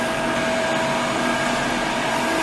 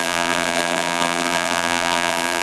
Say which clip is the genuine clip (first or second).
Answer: first